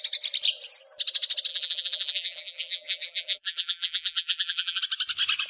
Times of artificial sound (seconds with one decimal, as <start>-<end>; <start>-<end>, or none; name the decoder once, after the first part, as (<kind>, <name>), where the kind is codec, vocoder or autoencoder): 1.5-4.8 (vocoder, BigVGAN v2)